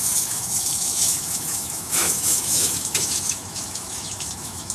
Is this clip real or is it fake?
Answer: fake